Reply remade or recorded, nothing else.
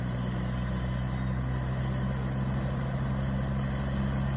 recorded